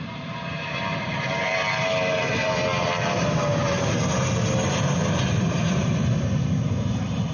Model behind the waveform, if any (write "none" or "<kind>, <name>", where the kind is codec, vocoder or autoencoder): vocoder, BigVGAN v2